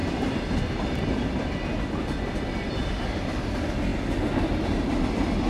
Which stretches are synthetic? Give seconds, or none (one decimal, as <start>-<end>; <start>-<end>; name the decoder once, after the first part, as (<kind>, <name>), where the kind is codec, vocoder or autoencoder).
none